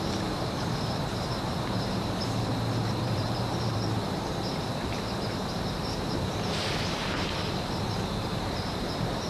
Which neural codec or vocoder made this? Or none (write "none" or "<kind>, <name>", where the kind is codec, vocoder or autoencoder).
vocoder, BigVGAN v2